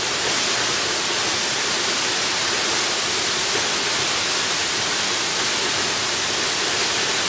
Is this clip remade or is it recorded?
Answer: recorded